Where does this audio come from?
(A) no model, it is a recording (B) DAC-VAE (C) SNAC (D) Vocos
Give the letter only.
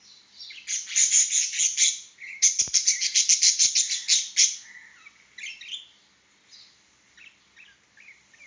A